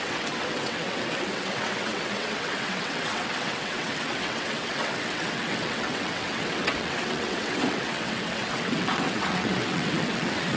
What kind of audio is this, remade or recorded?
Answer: remade